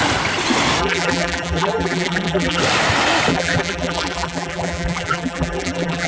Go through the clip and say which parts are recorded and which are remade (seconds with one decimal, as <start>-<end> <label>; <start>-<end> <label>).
0.0-0.8 recorded; 0.8-2.6 remade; 2.6-3.3 recorded; 3.3-6.1 remade